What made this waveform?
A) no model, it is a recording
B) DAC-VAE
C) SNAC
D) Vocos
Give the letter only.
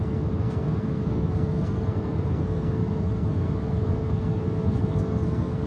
C